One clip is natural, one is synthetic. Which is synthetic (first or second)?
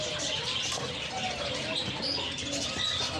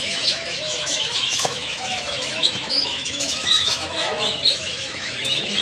second